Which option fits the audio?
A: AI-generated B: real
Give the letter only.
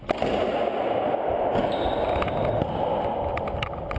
B